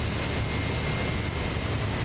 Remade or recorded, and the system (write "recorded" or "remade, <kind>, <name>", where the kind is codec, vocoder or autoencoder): recorded